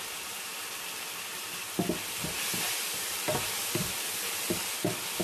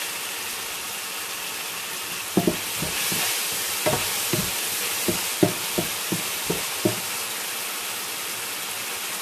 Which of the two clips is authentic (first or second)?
second